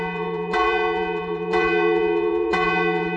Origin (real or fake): fake